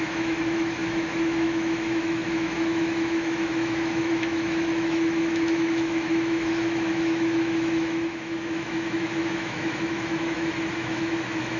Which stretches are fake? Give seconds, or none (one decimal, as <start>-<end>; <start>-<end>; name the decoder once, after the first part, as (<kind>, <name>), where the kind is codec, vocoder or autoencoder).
0.0-11.6 (autoencoder, DAC-VAE)